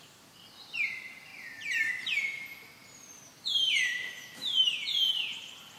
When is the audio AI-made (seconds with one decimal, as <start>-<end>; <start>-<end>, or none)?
0.0-1.3; 1.9-5.8